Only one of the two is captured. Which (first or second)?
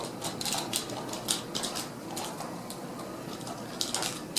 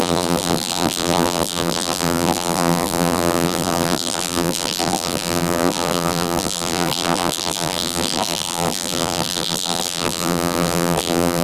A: first